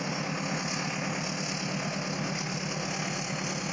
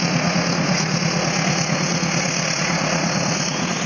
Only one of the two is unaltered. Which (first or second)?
first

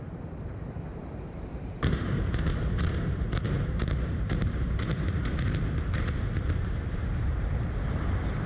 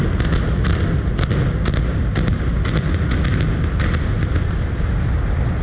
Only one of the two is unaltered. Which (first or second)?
second